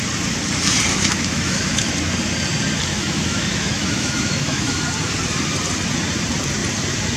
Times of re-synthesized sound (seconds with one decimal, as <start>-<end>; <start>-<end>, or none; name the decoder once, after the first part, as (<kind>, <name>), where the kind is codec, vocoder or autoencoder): 0.9-1.9 (autoencoder, DAC-VAE); 2.9-4.8